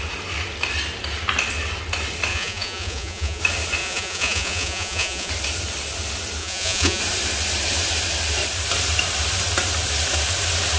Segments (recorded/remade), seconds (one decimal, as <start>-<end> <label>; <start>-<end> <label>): 0.0-2.3 recorded; 2.3-3.4 remade; 3.4-3.8 recorded; 3.8-5.3 remade; 5.3-6.4 recorded; 6.4-7.0 remade; 7.0-10.8 recorded